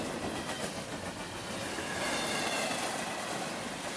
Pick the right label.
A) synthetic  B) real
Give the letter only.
B